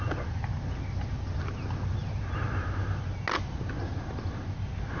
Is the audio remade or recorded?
recorded